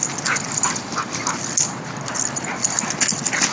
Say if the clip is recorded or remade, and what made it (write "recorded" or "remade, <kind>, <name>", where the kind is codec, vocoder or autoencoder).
recorded